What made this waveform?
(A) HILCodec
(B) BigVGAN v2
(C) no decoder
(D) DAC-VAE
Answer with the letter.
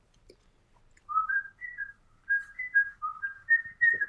C